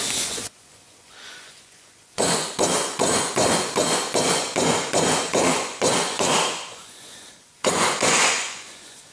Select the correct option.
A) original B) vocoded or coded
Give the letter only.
B